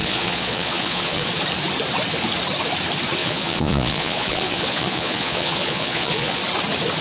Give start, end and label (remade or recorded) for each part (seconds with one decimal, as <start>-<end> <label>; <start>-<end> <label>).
0.0-1.3 remade; 1.3-3.2 recorded; 3.2-6.4 remade; 6.4-7.0 recorded